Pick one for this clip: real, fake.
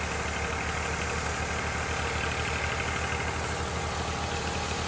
real